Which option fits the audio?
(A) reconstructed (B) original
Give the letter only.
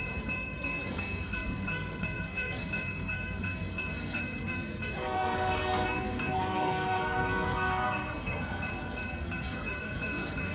A